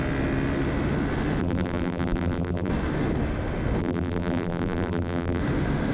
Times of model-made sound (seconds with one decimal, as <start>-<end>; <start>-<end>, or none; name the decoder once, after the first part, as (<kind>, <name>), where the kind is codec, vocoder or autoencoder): 1.4-2.7 (vocoder, BigVGAN v2); 3.8-5.4